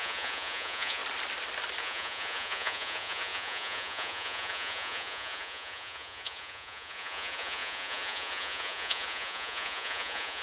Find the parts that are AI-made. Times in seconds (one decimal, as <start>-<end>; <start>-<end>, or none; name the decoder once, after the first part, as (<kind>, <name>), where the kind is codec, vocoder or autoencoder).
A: 0.0-1.0 (vocoder, Vocos); 1.8-10.4